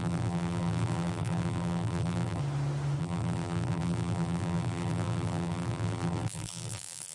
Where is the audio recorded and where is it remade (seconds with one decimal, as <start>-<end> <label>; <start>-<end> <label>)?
0.0-2.4 remade; 2.4-3.0 recorded; 3.0-7.1 remade